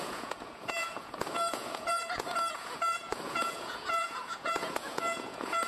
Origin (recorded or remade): remade